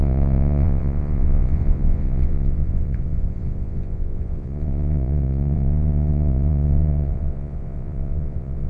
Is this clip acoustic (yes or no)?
no